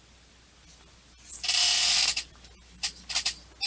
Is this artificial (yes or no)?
no